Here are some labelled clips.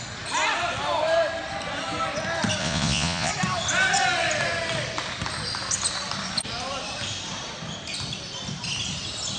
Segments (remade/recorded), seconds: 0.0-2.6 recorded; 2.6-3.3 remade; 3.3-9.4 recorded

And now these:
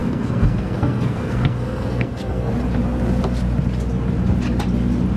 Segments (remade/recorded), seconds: 0.0-2.5 remade; 2.5-5.2 recorded

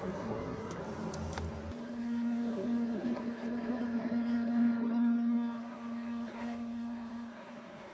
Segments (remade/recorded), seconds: 0.0-0.8 remade; 0.8-1.8 recorded; 1.8-7.9 remade

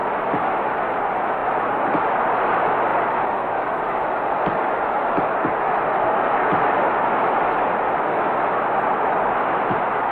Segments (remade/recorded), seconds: 0.0-10.1 recorded

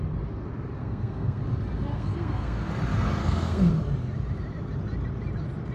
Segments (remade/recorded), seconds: 0.0-0.8 recorded; 0.8-1.4 remade; 1.4-1.9 recorded; 1.9-2.7 remade; 2.7-3.2 recorded; 3.2-3.7 remade; 3.7-5.7 recorded

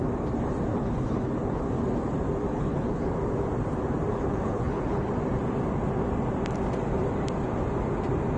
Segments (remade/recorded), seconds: 0.0-0.7 recorded; 0.7-1.7 remade; 1.7-2.5 recorded; 2.5-3.1 remade; 3.1-4.1 recorded; 4.1-5.1 remade; 5.1-8.4 recorded